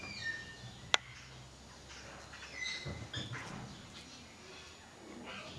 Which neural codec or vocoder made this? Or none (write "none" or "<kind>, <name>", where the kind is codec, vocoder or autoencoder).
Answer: none